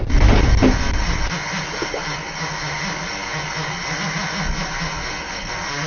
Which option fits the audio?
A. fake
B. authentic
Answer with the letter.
B